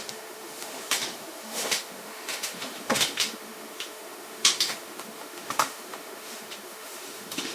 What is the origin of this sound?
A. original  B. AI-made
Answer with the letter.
B